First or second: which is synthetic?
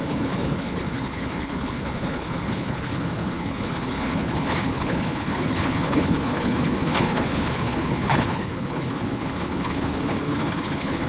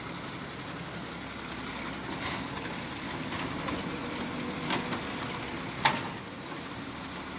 first